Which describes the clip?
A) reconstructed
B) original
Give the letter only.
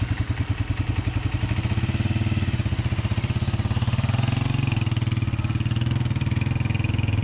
B